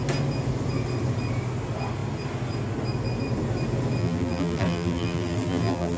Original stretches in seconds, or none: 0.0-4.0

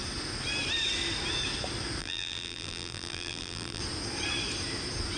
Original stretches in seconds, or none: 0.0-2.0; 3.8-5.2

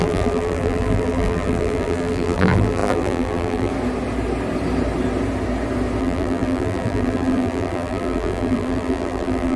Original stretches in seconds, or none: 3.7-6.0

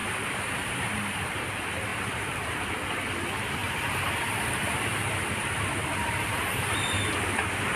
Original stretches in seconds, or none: 1.4-1.9; 2.7-3.6; 6.8-7.8

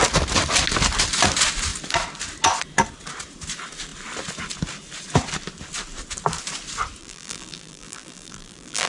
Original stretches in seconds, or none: 0.0-7.0

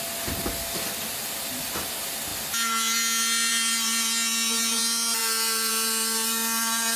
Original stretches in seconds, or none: 0.0-7.0